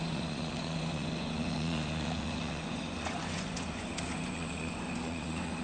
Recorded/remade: remade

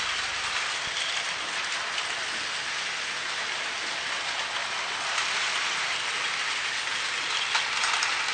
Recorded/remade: recorded